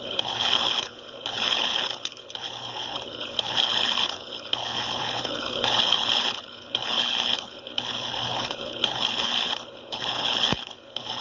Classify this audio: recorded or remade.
remade